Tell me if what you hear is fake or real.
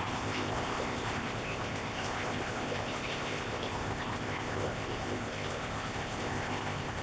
fake